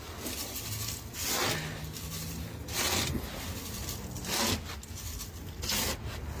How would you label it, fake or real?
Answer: real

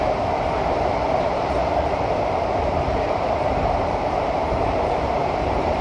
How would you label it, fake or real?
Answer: fake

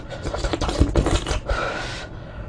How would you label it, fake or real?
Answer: fake